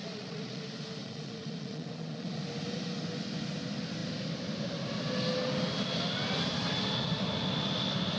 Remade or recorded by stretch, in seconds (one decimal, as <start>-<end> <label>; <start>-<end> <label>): 0.0-0.6 remade; 0.6-1.0 recorded; 1.0-2.4 remade; 2.4-8.2 recorded